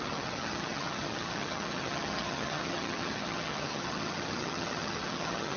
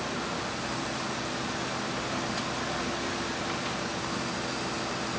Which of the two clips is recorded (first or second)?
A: second